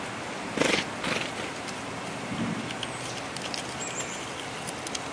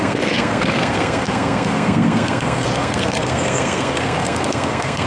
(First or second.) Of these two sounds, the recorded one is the first